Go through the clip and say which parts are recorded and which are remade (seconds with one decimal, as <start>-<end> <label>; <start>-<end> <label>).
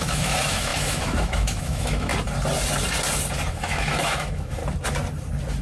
0.0-2.1 remade; 2.1-3.5 recorded; 3.5-4.6 remade; 4.6-5.6 recorded